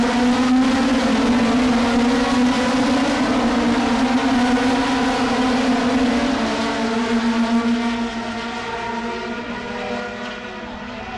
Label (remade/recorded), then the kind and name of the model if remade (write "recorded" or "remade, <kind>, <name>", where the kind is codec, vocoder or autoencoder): recorded